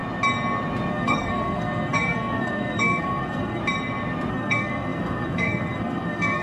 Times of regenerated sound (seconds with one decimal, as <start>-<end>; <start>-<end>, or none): 0.9-3.6; 4.3-6.4